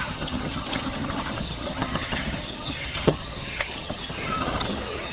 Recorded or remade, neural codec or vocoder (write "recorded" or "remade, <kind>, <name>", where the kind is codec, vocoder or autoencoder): remade, vocoder, HiFi-GAN